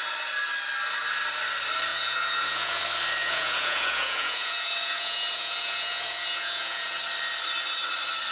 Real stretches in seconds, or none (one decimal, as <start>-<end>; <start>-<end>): 0.0-1.9; 2.8-3.2; 7.0-8.3